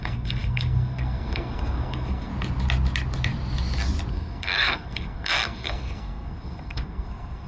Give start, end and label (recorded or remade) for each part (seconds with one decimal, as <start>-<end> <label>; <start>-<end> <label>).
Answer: 0.0-2.3 remade; 2.3-4.1 recorded; 4.1-7.5 remade